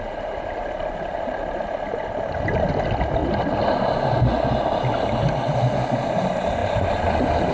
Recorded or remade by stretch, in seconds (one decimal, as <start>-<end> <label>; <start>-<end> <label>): 0.0-7.5 recorded